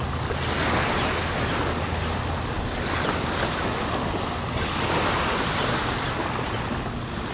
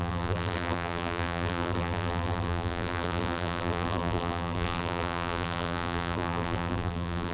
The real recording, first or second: first